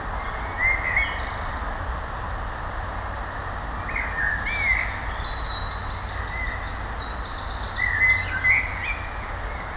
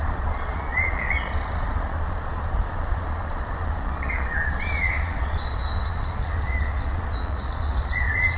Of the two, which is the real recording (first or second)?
first